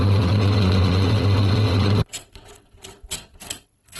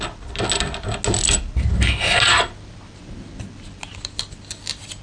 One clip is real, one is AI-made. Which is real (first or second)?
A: second